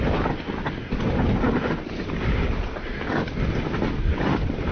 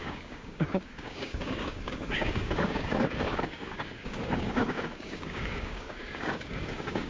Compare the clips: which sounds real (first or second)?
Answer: first